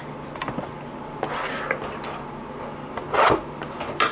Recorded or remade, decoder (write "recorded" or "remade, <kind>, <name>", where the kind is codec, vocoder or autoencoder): recorded